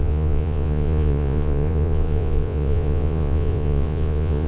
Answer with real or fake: fake